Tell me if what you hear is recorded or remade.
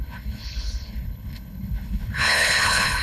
remade